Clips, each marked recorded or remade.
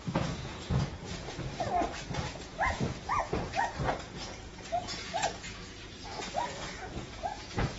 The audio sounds remade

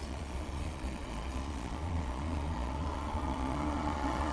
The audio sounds remade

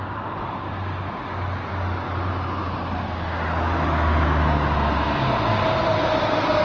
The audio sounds recorded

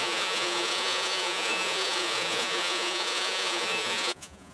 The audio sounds remade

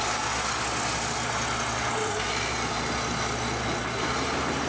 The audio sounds recorded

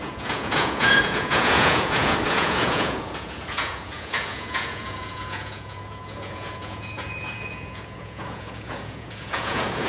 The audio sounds remade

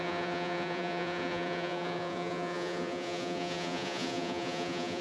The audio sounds remade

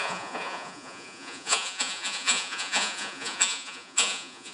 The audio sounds remade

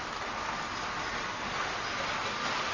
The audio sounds recorded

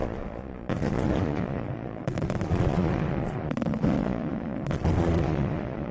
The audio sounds remade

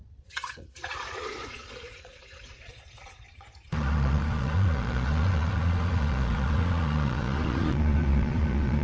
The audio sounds remade